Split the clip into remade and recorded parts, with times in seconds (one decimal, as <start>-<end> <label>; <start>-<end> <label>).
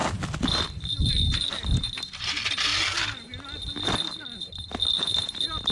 0.0-5.7 recorded